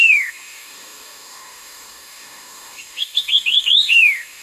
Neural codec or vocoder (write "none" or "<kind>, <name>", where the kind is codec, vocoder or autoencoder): codec, DAC